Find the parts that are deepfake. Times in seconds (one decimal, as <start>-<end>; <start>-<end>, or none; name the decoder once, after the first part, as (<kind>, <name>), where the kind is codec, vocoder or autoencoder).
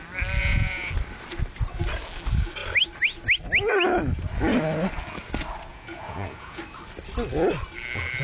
0.4-0.9 (vocoder, Vocos); 5.7-6.6